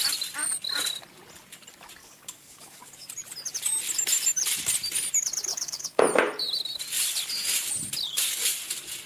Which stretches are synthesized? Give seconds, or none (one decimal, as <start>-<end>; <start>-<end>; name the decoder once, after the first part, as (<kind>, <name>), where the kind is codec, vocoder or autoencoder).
2.0-3.1 (codec, DAC); 5.5-6.0

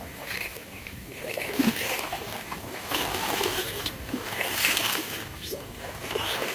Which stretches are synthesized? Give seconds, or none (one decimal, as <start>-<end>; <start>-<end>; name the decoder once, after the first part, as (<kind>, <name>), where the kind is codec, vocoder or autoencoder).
0.0-6.5 (codec, DAC)

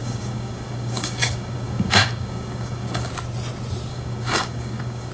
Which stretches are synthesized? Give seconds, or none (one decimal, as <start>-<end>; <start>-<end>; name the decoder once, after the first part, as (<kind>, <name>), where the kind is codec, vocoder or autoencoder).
0.0-3.1 (codec, DAC); 3.9-5.1

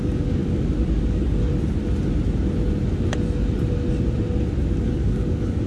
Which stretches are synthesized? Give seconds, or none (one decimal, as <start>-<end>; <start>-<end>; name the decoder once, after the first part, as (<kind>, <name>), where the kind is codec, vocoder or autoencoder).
0.0-0.4 (codec, DAC); 0.9-1.5; 4.8-5.7

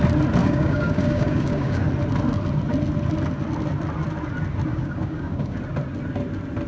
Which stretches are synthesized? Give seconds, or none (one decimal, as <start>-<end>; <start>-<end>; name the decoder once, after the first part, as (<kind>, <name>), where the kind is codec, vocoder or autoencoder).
0.4-1.9 (codec, DAC); 4.7-5.6